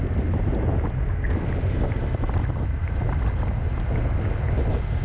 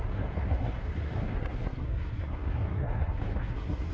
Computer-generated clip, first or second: second